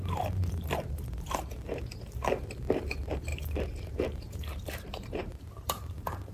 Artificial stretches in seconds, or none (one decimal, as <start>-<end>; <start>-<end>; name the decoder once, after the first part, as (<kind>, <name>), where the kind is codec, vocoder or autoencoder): 0.0-6.3 (vocoder, BigVGAN v2)